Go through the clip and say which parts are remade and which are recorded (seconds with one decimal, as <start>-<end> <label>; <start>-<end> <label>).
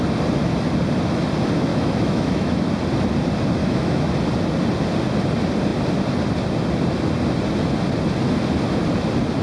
0.0-1.7 recorded; 1.7-2.6 remade; 2.6-3.6 recorded; 3.6-4.1 remade; 4.1-9.4 recorded